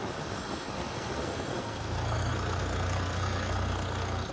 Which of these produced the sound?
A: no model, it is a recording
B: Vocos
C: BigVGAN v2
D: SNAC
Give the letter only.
D